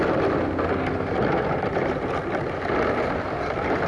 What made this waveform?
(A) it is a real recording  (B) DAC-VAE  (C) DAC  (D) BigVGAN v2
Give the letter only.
A